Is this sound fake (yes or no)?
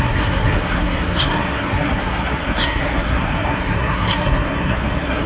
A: yes